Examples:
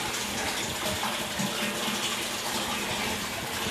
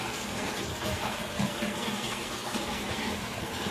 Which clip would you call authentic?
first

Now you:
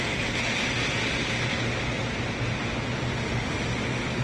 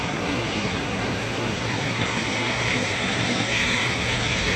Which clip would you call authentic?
first